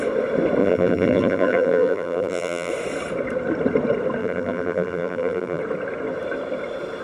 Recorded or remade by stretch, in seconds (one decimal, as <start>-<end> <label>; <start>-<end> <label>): 0.0-0.6 recorded; 0.6-2.7 remade; 2.7-4.2 recorded; 4.2-5.6 remade; 5.6-7.0 recorded